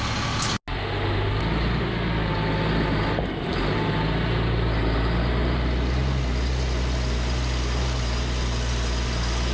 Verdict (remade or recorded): recorded